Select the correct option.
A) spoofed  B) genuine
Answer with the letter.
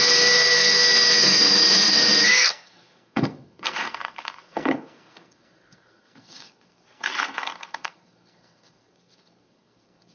A